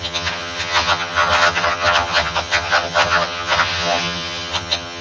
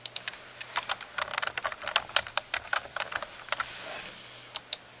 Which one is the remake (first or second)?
first